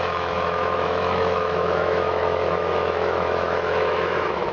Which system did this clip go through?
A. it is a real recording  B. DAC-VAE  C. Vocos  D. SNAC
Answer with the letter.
B